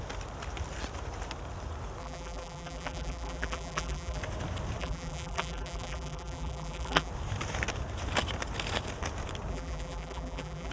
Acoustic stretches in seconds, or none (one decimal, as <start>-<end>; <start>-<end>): 0.0-2.0; 4.2-4.8; 7.1-9.5

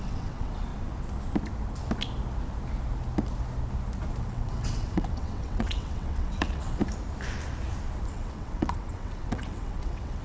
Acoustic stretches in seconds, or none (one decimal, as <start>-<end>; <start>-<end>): 0.7-4.2; 6.8-8.1

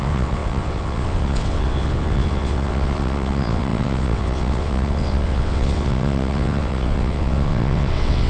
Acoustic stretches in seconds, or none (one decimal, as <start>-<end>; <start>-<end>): none

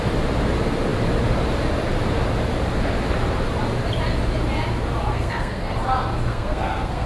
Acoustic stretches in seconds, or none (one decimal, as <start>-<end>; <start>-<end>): 0.0-5.1; 5.7-6.3

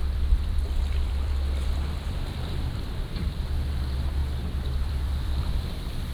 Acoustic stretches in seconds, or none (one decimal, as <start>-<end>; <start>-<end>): 3.4-4.2

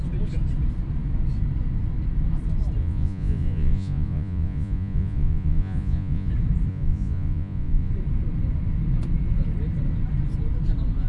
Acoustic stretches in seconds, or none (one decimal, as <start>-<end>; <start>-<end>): 0.0-2.8; 6.3-6.7; 7.9-11.1